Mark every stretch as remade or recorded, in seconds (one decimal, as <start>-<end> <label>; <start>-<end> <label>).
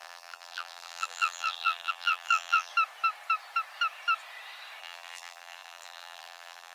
0.0-2.7 remade; 2.7-4.8 recorded; 4.8-6.7 remade